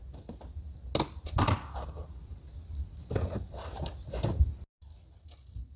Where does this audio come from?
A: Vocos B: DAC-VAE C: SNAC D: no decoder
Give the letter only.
D